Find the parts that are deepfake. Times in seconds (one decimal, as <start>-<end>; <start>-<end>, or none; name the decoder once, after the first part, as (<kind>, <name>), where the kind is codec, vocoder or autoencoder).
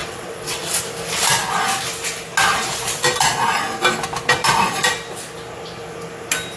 0.0-0.8 (vocoder, WaveNeXt)